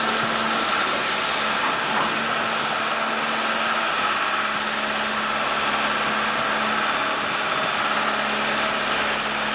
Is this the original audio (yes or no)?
yes